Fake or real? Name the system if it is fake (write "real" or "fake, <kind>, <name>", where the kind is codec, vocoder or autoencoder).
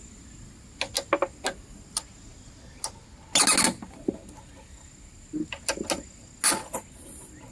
real